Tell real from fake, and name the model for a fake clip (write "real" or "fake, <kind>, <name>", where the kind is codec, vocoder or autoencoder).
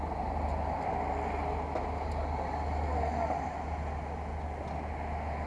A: real